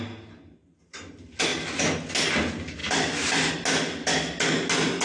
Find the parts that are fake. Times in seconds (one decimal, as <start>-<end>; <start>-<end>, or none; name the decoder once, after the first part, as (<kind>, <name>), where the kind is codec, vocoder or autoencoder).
none